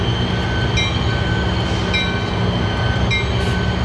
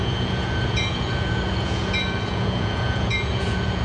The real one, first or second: first